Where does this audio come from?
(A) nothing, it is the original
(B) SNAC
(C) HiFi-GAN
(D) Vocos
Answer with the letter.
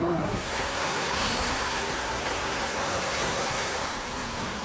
B